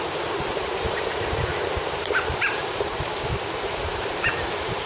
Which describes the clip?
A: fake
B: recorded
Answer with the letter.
A